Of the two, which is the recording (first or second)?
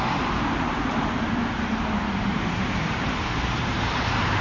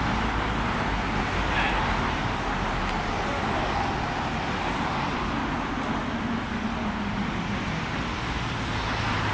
second